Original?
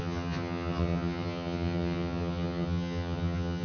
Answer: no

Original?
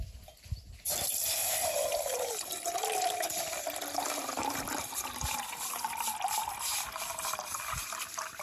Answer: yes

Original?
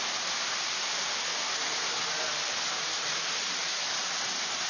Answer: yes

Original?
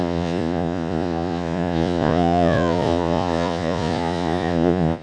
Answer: no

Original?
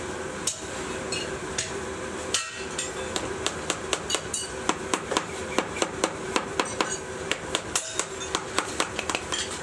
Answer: no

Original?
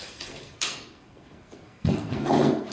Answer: no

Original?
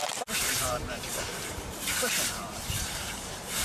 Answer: no